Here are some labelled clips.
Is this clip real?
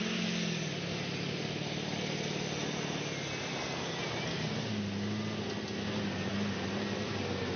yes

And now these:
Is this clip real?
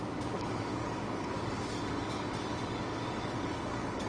no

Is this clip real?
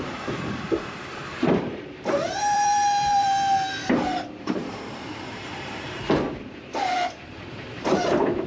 no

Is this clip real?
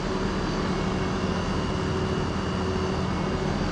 yes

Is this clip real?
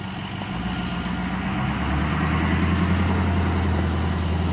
yes